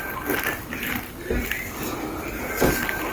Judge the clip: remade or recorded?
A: recorded